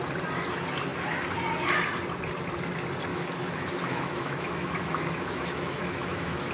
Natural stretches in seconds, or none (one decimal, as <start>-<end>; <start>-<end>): 0.0-3.1